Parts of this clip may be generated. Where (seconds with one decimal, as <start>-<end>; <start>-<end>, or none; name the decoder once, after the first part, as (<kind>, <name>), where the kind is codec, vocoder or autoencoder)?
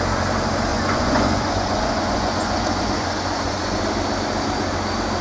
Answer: 0.7-3.8 (vocoder, Vocos)